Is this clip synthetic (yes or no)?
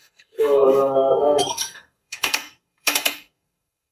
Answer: yes